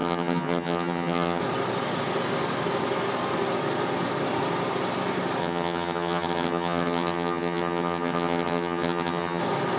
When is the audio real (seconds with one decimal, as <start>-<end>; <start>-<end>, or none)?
1.4-5.4; 9.4-9.8